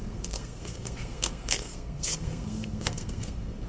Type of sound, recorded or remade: remade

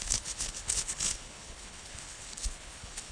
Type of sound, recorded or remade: remade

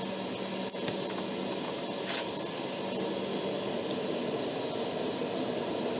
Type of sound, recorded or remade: recorded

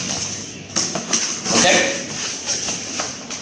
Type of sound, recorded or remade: recorded